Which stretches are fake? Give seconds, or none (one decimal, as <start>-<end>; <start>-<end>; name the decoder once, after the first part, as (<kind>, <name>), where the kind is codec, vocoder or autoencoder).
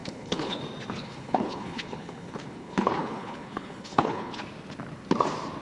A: 0.0-0.6 (codec, HILCodec); 1.0-4.4